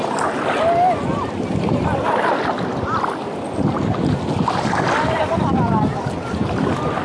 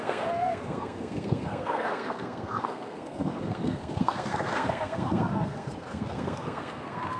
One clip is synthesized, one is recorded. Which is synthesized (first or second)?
second